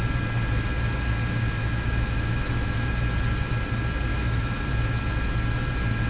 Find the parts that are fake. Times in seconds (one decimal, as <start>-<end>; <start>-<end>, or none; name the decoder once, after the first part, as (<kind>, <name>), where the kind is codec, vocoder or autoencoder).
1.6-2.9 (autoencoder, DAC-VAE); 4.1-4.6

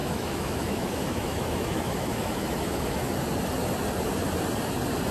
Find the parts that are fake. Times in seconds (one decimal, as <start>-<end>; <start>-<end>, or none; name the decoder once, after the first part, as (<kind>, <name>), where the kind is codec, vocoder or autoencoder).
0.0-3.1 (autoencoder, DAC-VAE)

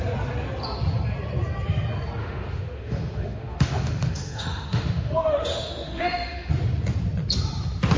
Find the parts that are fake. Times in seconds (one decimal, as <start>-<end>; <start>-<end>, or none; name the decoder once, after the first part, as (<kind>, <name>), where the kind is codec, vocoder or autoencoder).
2.2-6.5 (autoencoder, DAC-VAE)

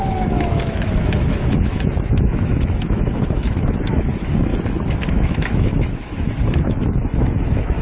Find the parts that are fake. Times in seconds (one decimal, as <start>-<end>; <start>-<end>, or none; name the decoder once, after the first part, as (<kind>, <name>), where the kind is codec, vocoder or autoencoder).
0.0-4.5 (autoencoder, DAC-VAE); 5.1-7.8